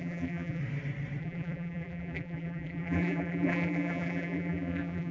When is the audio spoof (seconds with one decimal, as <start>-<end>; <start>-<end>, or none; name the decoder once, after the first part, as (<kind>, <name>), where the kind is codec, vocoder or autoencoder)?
0.0-0.6 (vocoder, BigVGAN v2); 1.2-5.1